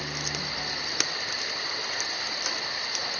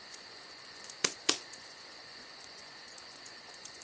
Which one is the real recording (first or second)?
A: first